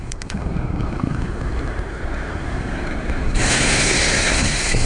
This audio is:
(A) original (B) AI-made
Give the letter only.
B